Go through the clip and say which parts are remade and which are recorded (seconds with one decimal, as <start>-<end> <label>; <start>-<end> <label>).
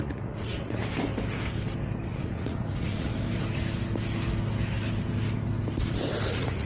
0.0-0.8 remade; 0.8-2.1 recorded; 2.1-3.1 remade; 3.1-6.3 recorded; 6.3-6.7 remade